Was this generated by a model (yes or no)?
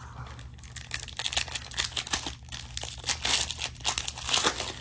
no